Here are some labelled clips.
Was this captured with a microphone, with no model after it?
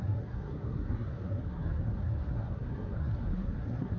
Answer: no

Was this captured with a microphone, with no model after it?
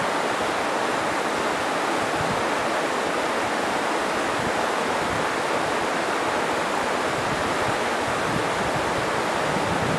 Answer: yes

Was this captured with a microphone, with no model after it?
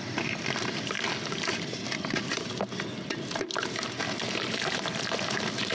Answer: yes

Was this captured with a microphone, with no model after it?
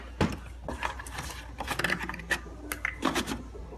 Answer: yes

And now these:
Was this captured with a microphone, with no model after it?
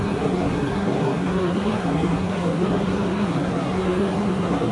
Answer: no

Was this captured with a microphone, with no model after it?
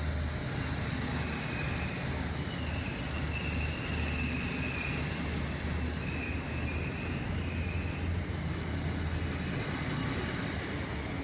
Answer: yes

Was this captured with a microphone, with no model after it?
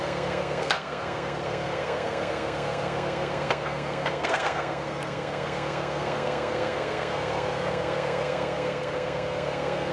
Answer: no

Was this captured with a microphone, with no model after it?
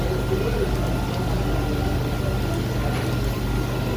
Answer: yes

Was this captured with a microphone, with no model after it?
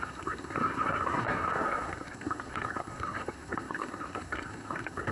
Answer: no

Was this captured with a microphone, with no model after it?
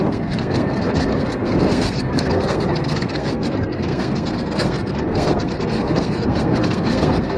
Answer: no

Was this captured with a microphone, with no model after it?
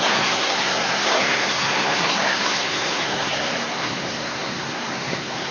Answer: no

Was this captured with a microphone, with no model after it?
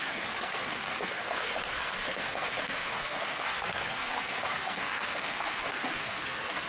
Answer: no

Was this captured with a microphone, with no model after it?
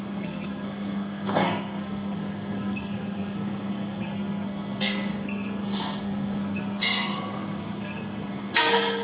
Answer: no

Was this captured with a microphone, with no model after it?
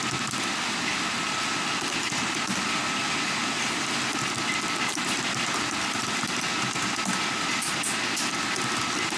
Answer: yes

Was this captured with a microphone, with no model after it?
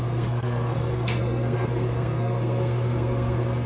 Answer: no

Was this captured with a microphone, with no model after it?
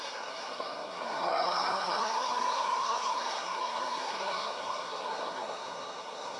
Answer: no